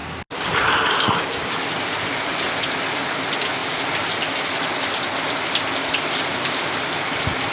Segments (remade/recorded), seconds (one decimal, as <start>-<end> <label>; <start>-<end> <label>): 0.0-7.5 recorded